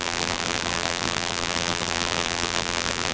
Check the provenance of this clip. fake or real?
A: fake